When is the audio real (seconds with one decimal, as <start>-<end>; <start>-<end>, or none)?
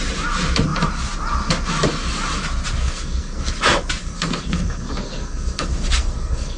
0.0-2.8; 3.5-4.0